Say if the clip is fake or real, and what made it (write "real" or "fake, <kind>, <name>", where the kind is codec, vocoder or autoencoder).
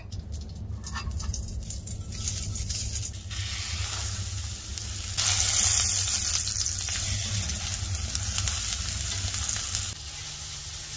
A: real